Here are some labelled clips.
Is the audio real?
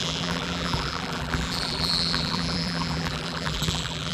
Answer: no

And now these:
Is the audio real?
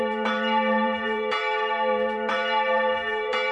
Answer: no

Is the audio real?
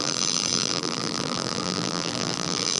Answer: no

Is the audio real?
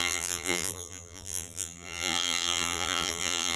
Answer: no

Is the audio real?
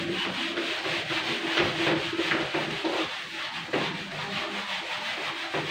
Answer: yes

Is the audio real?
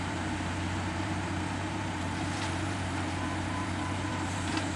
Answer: no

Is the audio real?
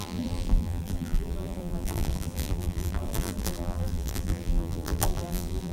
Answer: no